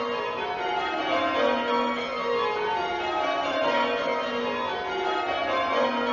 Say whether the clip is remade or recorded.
recorded